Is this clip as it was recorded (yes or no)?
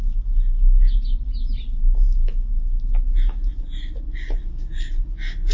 yes